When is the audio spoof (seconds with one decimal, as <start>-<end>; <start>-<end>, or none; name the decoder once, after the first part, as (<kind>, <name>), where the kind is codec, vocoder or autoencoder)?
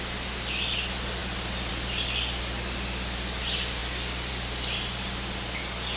none